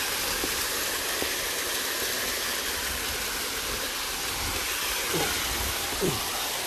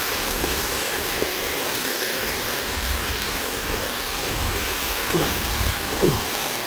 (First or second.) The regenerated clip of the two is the second